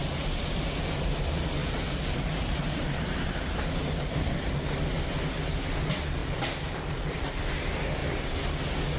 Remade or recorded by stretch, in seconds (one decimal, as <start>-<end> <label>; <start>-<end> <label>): 0.0-1.6 recorded; 1.6-4.3 remade; 4.3-6.2 recorded; 6.2-7.4 remade; 7.4-8.0 recorded; 8.0-8.5 remade; 8.5-9.0 recorded